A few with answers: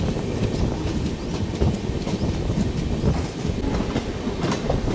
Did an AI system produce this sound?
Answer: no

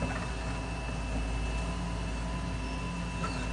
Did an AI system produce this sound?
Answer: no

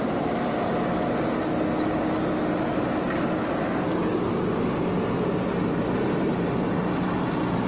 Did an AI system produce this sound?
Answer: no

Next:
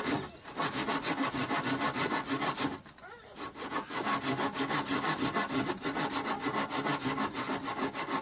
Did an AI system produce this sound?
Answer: no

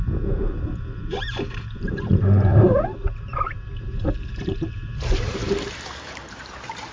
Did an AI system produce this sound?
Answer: yes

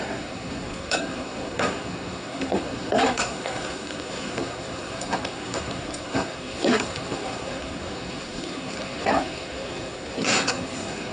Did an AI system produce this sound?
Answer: yes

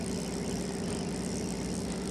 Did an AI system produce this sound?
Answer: no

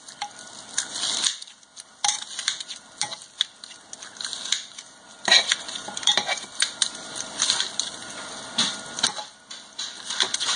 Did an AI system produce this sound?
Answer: no